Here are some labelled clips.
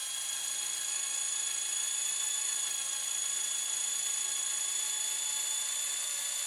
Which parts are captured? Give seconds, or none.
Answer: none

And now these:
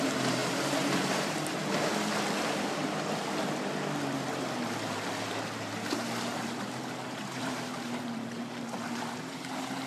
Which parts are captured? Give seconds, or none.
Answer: 1.6-5.4

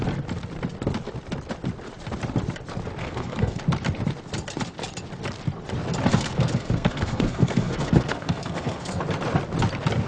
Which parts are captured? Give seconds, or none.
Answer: 0.0-3.0; 3.6-6.1; 9.0-10.1

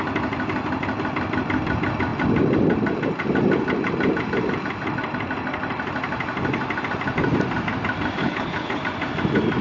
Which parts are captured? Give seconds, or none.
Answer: 0.0-8.2; 8.8-9.6

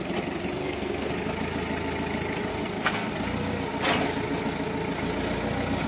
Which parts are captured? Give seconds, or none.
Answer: 0.0-0.6; 1.1-2.5; 3.1-5.9

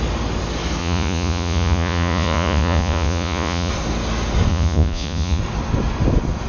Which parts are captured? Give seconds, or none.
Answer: 0.0-0.8; 3.7-4.5; 5.4-6.5

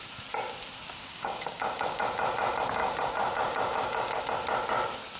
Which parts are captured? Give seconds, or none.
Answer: 0.0-1.0; 2.0-2.8; 4.2-5.2